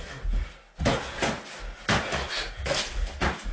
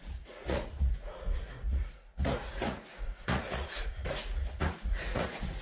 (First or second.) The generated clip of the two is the second